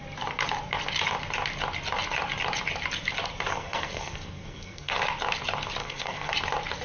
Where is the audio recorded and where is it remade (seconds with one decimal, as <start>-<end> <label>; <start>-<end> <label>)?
0.0-3.5 recorded; 3.5-5.0 remade; 5.0-5.8 recorded; 5.8-6.3 remade; 6.3-6.8 recorded